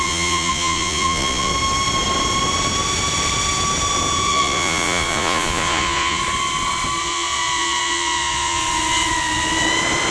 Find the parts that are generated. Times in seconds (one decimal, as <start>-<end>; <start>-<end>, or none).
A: 0.0-1.5; 4.3-6.2; 7.0-8.6